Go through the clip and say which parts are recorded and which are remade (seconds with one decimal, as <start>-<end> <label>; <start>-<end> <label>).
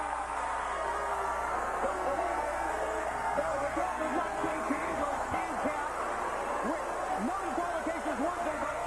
0.0-5.4 remade; 5.4-8.5 recorded; 8.5-8.9 remade